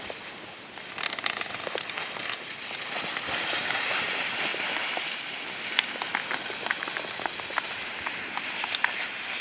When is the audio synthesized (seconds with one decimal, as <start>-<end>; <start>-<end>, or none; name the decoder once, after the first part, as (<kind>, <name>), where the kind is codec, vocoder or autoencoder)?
none